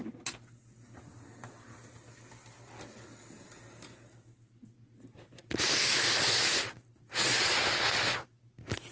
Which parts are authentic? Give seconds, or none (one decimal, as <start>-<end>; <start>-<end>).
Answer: 0.0-8.9